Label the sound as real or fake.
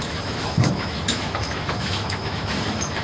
fake